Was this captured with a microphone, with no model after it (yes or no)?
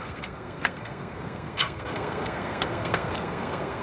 no